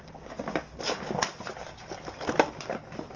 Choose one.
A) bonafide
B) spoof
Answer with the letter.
A